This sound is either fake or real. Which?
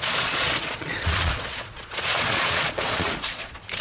fake